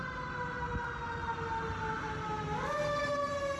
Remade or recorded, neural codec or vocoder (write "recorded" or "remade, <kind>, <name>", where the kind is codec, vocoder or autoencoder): recorded